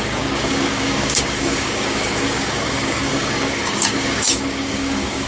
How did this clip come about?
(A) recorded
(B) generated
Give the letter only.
B